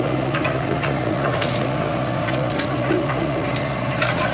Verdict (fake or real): fake